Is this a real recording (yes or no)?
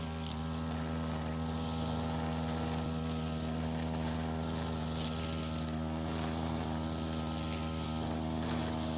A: yes